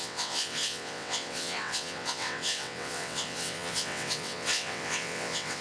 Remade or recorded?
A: remade